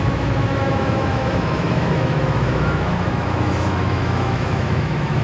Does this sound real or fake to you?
fake